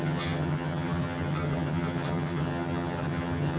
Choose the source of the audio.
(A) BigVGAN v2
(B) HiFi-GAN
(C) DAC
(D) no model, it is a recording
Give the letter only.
B